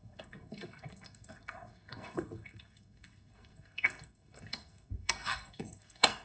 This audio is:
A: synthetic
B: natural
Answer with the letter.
A